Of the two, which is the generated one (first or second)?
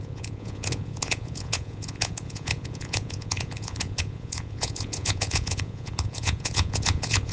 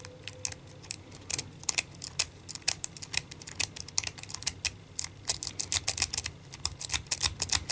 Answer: first